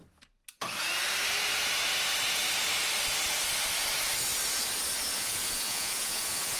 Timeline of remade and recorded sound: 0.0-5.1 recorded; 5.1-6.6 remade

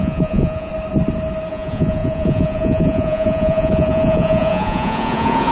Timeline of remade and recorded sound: 0.0-0.7 remade; 0.7-1.5 recorded; 1.5-5.5 remade

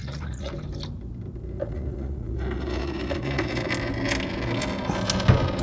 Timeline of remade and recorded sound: 0.0-0.5 remade; 0.5-1.6 recorded; 1.6-3.7 remade; 3.7-5.6 recorded

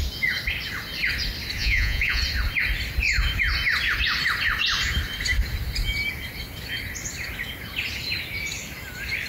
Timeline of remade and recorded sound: 0.0-1.6 recorded; 1.6-2.2 remade; 2.2-9.3 recorded